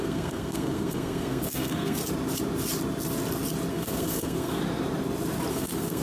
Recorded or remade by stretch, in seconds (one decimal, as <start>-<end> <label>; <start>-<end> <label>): 0.0-2.0 remade; 2.0-3.7 recorded; 3.7-4.6 remade; 4.6-5.5 recorded; 5.5-6.0 remade